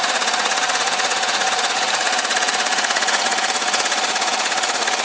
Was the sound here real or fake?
fake